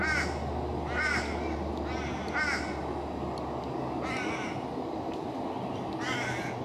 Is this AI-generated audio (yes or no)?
yes